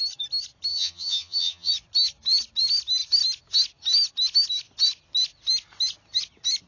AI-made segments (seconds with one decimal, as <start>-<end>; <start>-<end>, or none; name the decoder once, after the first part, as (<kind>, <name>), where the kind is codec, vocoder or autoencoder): 0.7-1.7 (vocoder, HiFi-GAN)